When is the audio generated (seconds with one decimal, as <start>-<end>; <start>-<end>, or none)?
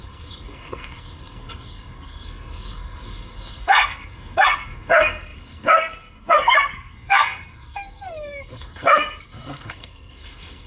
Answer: 0.0-10.7